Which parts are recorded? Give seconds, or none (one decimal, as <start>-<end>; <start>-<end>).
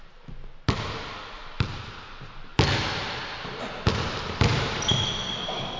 0.0-5.8